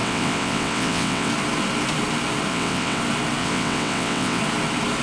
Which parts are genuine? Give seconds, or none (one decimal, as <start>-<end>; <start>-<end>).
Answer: 1.3-2.5; 3.0-3.4; 4.4-5.0